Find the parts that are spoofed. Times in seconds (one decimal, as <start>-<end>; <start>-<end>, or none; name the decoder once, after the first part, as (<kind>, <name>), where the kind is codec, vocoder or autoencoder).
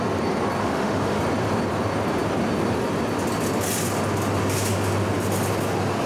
0.6-1.2 (autoencoder, DAC-VAE)